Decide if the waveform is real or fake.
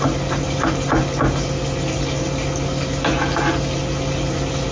real